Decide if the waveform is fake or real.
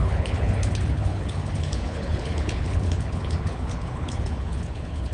fake